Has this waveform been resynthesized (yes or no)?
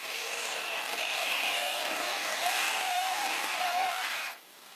yes